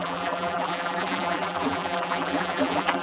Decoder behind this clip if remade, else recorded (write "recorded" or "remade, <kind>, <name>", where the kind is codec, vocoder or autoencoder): remade, vocoder, BigVGAN v2